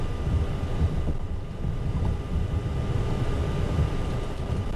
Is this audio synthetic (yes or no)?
no